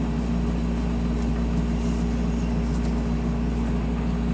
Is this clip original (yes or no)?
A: yes